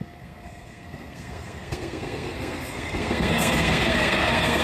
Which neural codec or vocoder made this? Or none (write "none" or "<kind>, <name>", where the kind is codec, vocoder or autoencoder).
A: codec, SNAC